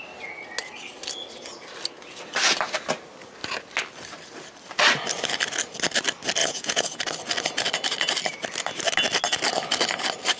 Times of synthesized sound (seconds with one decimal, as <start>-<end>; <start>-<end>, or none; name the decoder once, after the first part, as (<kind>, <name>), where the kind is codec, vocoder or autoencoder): 6.4-7.0 (vocoder, Vocos)